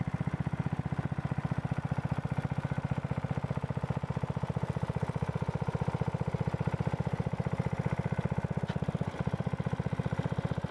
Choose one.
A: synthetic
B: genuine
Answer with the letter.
B